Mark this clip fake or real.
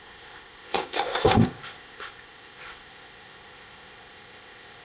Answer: fake